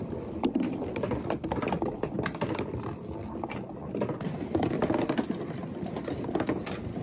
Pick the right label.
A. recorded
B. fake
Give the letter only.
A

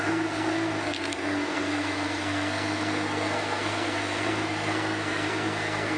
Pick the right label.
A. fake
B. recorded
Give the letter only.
A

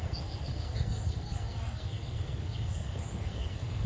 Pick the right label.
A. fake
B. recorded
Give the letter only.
A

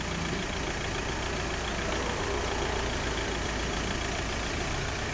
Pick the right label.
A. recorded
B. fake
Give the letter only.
A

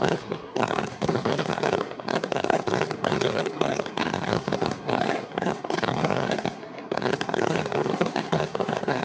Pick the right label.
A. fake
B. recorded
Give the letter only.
A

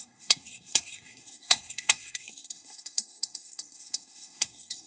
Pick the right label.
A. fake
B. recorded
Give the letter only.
A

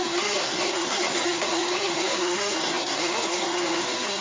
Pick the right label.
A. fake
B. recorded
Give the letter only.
A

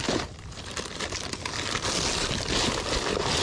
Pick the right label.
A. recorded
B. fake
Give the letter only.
A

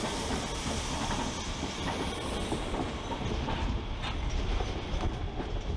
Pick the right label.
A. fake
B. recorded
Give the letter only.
B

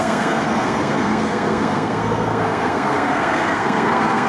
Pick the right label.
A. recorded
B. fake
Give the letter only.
B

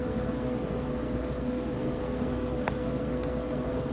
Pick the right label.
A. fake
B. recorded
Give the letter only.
A